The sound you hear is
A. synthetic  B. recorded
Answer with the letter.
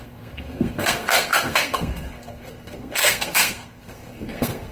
A